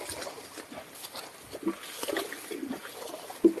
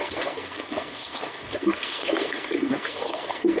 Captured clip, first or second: first